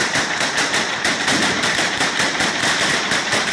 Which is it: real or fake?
fake